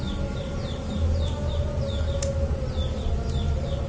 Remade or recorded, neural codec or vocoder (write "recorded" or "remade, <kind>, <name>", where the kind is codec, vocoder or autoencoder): recorded